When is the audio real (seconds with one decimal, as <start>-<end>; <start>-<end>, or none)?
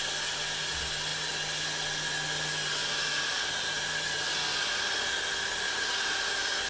0.0-6.7